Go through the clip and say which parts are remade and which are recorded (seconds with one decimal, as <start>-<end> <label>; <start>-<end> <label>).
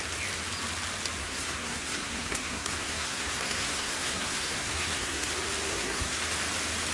0.0-1.2 recorded; 1.2-5.3 remade; 5.3-5.7 recorded; 5.7-6.2 remade; 6.2-6.9 recorded